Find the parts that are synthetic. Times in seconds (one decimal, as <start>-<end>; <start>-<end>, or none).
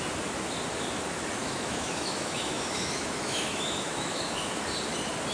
1.4-4.6